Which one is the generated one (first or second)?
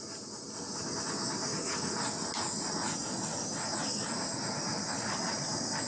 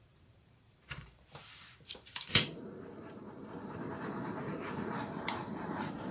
second